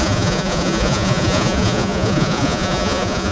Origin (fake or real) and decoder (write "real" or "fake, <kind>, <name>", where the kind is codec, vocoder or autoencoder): fake, vocoder, Vocos